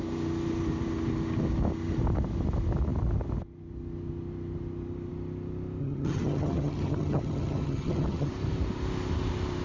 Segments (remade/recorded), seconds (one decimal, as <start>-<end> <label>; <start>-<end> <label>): 0.0-5.8 recorded; 5.8-8.3 remade; 8.3-9.6 recorded